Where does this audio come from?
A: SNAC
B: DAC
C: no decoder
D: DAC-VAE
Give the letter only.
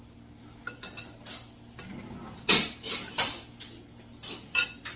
C